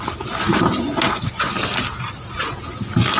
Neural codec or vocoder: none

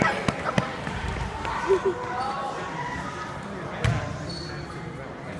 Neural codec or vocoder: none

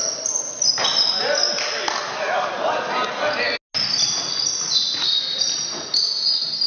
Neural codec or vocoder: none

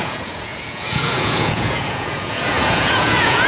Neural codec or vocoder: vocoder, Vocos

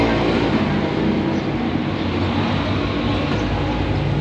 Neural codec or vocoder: none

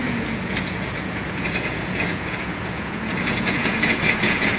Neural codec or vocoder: vocoder, Vocos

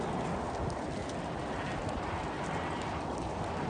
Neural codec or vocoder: none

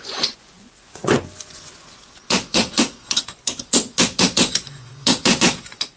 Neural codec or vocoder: vocoder, Vocos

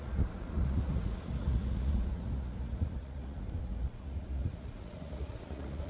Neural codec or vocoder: vocoder, Vocos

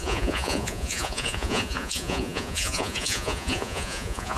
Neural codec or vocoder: vocoder, Vocos